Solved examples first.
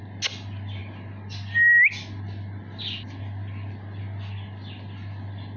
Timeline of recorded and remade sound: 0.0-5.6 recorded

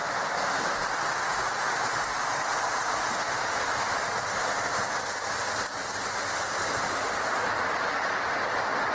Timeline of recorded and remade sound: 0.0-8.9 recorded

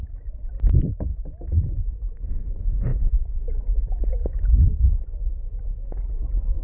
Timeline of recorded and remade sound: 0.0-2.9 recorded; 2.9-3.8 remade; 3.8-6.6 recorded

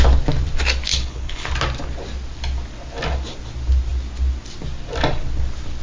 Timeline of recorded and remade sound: 0.0-0.9 recorded; 0.9-1.5 remade; 1.5-5.8 recorded